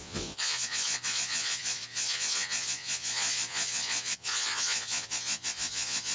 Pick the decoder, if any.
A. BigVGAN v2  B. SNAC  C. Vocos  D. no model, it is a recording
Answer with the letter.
C